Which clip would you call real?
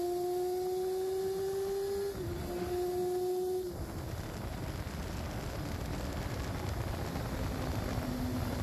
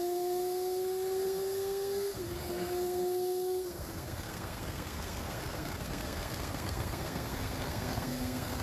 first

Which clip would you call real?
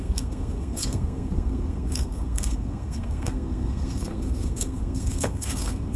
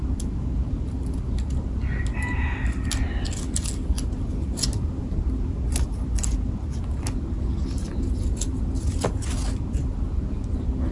second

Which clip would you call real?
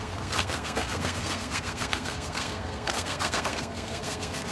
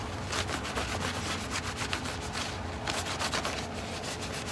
second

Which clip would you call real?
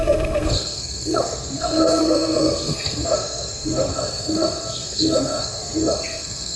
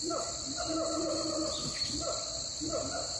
second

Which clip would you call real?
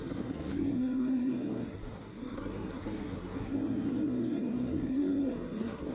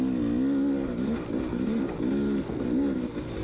second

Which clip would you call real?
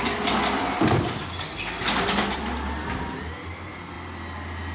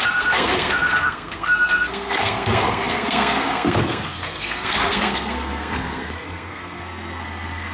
first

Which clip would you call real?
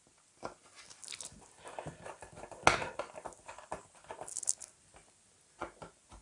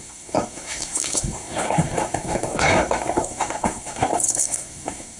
first